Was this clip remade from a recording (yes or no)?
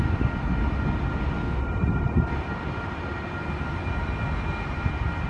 no